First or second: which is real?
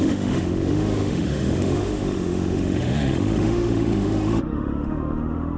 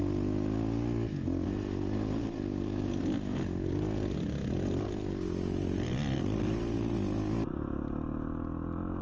second